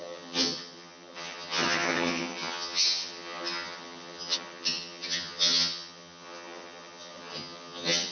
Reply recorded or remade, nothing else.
remade